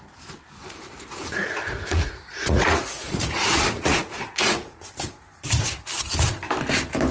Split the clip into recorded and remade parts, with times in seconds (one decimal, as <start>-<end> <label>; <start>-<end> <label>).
0.0-0.6 recorded; 0.6-4.9 remade; 4.9-7.1 recorded